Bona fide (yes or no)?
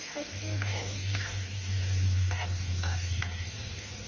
no